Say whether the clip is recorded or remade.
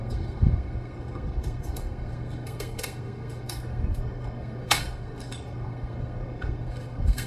remade